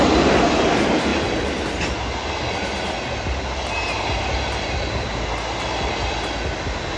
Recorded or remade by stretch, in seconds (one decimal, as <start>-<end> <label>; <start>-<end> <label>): 0.0-7.0 recorded